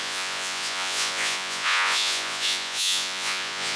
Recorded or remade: remade